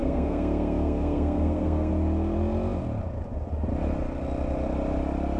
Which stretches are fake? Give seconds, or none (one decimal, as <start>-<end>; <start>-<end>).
0.0-1.9